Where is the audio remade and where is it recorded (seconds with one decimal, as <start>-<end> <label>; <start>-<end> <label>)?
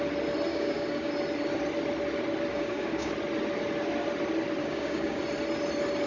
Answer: 0.0-0.5 recorded; 0.5-1.1 remade; 1.1-2.5 recorded; 2.5-3.1 remade; 3.1-4.6 recorded; 4.6-5.2 remade; 5.2-6.1 recorded